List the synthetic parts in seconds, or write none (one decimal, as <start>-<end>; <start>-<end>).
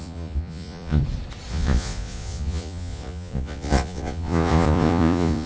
0.0-1.0; 1.5-5.5